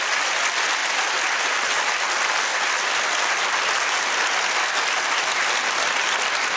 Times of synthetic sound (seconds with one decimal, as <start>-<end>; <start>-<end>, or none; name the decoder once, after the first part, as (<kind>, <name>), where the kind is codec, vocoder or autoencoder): 2.5-6.6 (vocoder, BigVGAN v2)